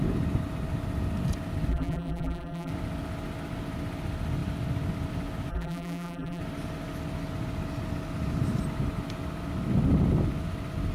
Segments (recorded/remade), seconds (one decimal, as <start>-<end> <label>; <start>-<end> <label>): 0.0-1.7 recorded; 1.7-2.7 remade; 2.7-5.5 recorded; 5.5-6.4 remade; 6.4-10.9 recorded